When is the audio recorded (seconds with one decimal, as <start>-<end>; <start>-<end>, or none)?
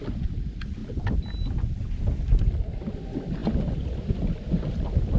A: 0.0-5.2